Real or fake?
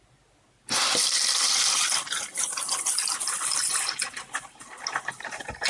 real